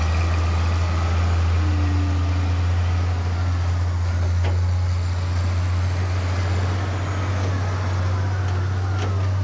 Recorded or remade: recorded